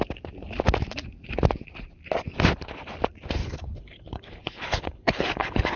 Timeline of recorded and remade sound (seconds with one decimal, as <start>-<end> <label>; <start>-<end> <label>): 0.0-3.4 recorded; 3.4-5.8 remade